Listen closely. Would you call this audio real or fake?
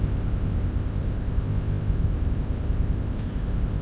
fake